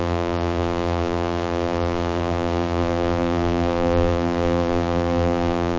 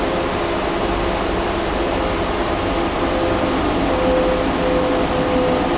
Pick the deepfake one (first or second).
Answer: first